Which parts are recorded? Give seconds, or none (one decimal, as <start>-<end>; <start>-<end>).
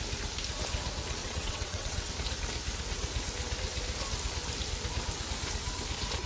0.0-1.2; 2.1-6.3